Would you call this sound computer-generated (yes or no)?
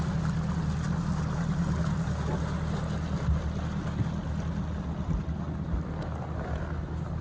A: no